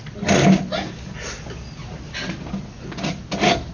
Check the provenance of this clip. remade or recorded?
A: recorded